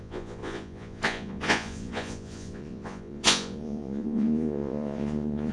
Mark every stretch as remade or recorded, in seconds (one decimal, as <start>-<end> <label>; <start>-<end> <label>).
0.0-5.5 remade